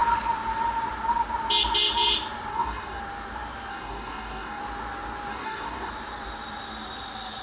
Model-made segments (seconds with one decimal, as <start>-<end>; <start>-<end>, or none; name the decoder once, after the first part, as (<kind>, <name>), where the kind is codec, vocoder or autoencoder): 2.5-3.0 (codec, DAC); 3.7-4.6; 5.3-5.9